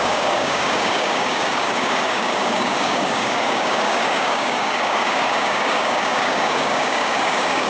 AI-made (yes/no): yes